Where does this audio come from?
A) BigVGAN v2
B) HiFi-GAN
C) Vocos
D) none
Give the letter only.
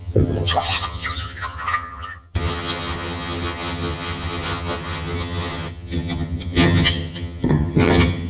B